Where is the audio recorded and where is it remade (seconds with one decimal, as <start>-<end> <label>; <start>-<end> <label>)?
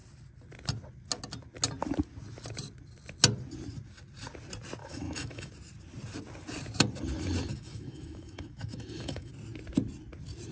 0.0-4.8 recorded; 4.8-5.5 remade; 5.5-7.5 recorded; 7.5-9.3 remade; 9.3-10.5 recorded